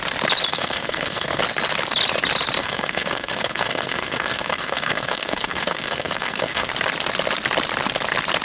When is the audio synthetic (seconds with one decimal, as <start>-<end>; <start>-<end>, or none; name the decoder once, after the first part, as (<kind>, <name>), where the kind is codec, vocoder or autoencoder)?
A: 0.5-1.4 (codec, SNAC); 2.6-6.7